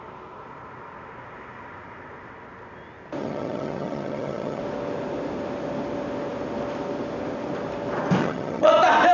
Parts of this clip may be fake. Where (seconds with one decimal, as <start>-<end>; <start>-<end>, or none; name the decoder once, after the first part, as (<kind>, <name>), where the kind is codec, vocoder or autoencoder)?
3.2-4.6 (vocoder, HiFi-GAN); 8.2-8.7